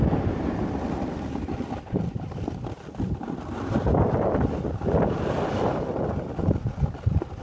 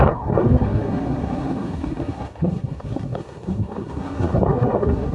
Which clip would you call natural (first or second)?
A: first